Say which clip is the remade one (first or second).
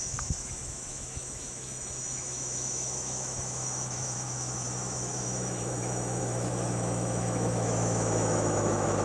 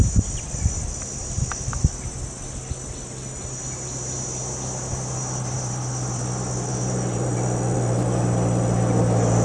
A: first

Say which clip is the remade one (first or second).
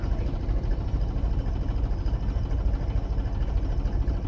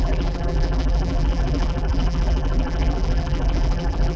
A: second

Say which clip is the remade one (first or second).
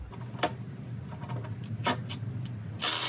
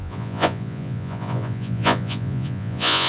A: second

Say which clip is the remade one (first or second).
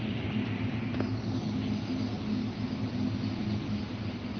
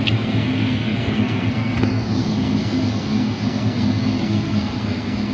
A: second